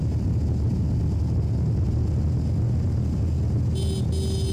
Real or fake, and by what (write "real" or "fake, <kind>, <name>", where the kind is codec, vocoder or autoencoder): real